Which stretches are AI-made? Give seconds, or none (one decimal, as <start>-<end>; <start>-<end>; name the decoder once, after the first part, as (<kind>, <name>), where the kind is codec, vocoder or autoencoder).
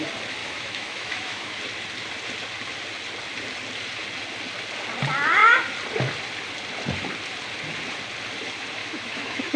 0.4-1.6 (autoencoder, DAC-VAE); 8.8-9.6